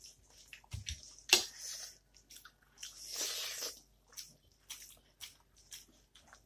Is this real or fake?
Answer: real